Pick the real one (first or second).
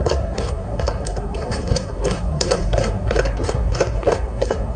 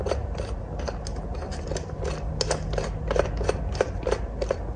second